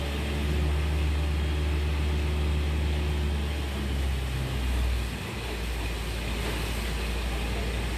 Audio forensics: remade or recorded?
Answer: recorded